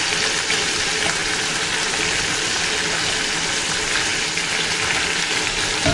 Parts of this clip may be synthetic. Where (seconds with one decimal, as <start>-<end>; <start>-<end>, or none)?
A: none

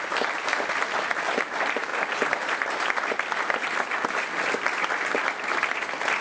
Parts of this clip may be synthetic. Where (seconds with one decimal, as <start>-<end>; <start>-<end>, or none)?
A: none

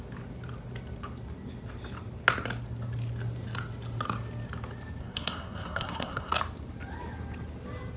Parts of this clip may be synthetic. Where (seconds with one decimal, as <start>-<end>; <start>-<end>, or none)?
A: 5.0-6.3

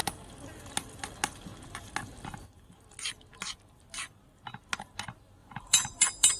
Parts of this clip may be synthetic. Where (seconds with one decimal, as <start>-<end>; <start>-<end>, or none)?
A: 5.4-6.4

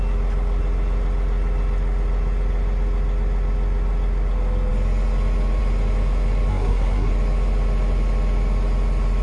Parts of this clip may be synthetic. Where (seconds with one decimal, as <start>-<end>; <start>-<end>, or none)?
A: 6.5-7.1